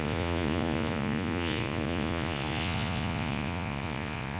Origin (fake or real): fake